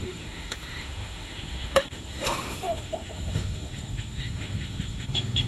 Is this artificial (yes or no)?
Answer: yes